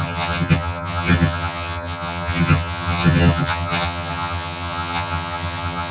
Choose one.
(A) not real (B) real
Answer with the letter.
A